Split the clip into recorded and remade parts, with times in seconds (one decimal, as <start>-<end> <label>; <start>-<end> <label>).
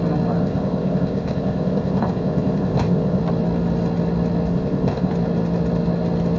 0.0-0.4 recorded; 0.4-3.2 remade; 3.2-4.5 recorded; 4.5-5.1 remade; 5.1-6.4 recorded